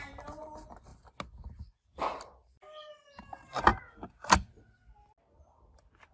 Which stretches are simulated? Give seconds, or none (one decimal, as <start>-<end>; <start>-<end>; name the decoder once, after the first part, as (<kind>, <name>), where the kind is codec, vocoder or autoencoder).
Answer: none